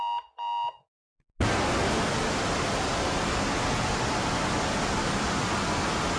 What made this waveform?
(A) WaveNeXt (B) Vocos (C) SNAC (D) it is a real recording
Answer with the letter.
D